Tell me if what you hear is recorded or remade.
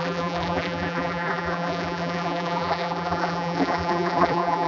remade